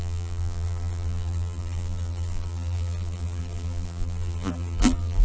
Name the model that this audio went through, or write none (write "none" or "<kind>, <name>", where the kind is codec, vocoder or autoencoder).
vocoder, BigVGAN v2